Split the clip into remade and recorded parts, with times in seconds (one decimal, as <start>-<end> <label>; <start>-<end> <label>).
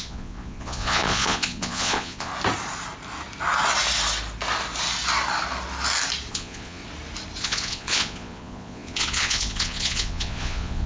0.0-2.3 remade; 2.3-6.3 recorded; 6.3-6.8 remade; 6.8-7.4 recorded; 7.4-10.9 remade